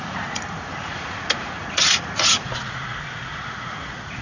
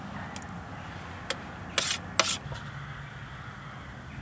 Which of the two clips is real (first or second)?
second